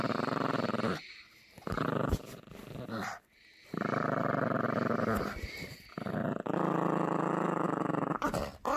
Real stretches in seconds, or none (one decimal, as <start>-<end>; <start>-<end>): 0.0-8.8